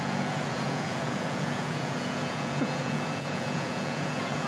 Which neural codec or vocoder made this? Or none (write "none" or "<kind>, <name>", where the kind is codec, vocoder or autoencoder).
vocoder, Vocos